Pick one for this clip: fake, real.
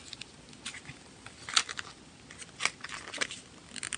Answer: real